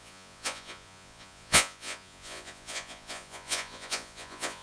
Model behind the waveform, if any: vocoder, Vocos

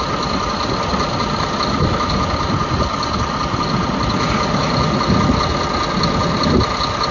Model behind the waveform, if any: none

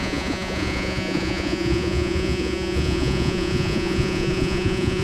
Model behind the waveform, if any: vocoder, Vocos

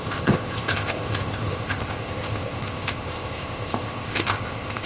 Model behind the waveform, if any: codec, ZipCodec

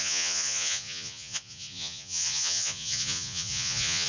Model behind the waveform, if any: vocoder, Vocos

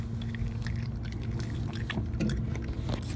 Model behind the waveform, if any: none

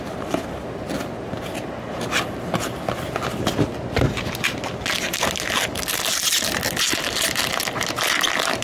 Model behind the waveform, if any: none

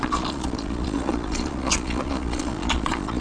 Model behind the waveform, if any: vocoder, Vocos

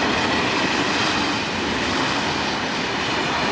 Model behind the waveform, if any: none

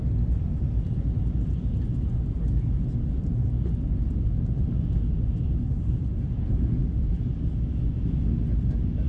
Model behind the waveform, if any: none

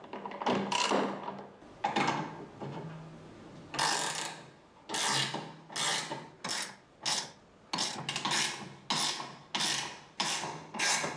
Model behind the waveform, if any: none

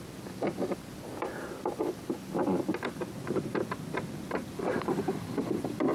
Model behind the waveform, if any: none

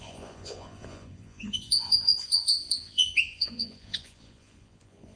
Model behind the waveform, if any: vocoder, Vocos